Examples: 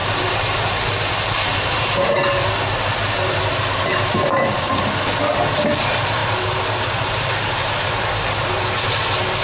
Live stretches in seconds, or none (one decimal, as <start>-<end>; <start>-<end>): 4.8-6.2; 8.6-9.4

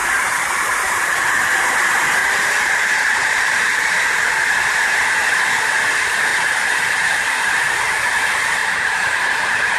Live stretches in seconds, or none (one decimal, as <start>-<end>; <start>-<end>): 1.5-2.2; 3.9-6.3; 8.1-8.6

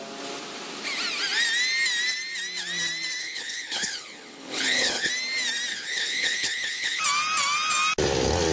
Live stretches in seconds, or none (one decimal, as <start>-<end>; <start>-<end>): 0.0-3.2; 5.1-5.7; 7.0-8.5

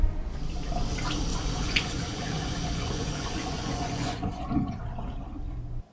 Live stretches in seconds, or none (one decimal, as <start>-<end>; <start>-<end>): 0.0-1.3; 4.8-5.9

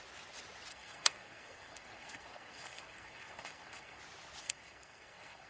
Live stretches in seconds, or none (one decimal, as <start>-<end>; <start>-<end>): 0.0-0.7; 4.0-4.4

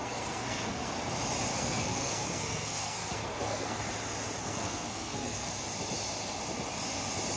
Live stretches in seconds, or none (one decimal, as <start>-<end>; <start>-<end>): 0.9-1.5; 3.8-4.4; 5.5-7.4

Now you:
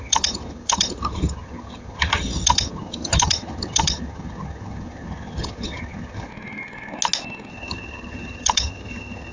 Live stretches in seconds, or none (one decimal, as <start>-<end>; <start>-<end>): 6.3-7.5

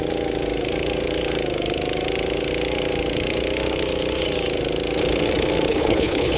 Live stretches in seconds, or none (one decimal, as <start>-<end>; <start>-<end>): 0.0-5.7